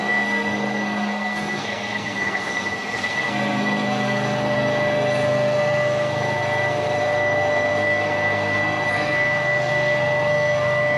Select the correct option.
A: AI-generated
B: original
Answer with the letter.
A